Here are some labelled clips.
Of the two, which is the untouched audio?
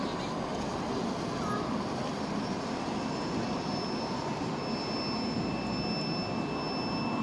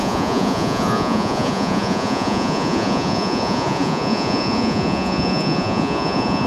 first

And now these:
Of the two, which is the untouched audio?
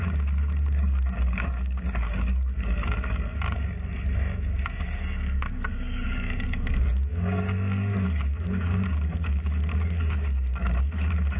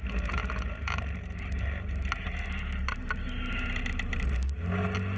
second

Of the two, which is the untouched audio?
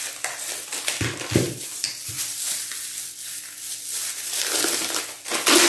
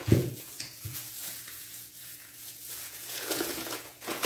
first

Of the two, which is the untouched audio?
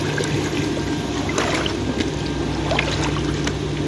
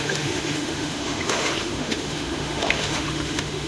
first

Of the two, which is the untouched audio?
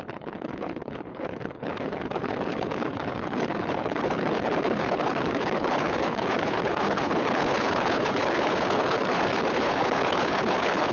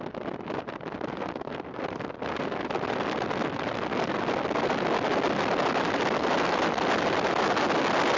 second